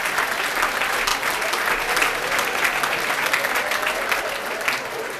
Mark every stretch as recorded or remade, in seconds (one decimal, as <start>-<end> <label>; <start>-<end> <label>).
0.0-5.2 recorded